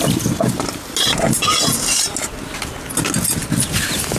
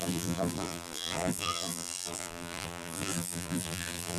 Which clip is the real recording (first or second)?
first